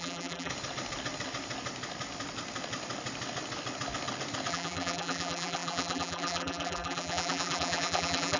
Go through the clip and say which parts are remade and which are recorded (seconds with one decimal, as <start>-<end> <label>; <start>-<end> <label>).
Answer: 0.0-0.5 remade; 0.5-4.5 recorded; 4.5-8.4 remade